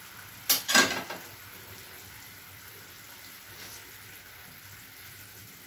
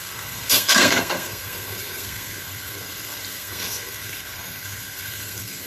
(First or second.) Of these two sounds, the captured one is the first